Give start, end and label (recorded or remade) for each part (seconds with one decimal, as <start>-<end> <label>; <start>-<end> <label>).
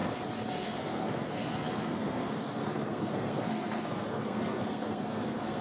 0.0-0.5 recorded; 0.5-5.6 remade